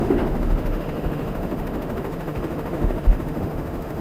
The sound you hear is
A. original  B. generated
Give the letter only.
B